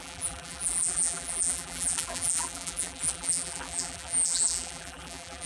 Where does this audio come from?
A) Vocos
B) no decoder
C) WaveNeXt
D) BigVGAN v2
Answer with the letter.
D